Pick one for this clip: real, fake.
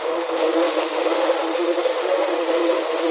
fake